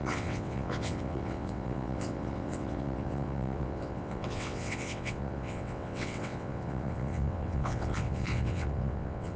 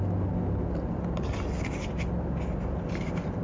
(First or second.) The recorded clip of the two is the second